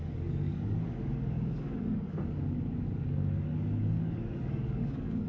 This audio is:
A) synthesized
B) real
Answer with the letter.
A